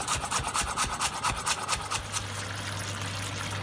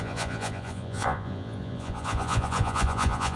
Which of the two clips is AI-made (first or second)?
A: second